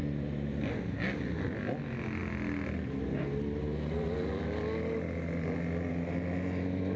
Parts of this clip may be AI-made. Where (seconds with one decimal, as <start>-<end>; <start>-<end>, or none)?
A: none